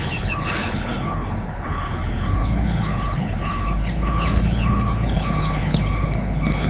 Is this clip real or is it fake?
fake